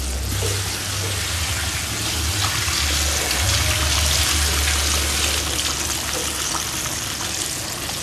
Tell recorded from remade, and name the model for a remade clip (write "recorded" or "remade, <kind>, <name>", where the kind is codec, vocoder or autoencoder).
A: recorded